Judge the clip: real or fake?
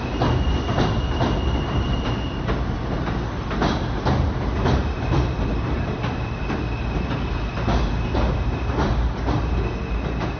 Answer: real